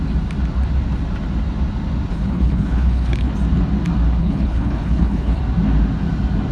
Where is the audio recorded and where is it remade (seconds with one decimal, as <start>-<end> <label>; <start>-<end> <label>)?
0.0-2.1 recorded; 2.1-3.3 remade; 3.3-4.2 recorded; 4.2-5.4 remade; 5.4-6.5 recorded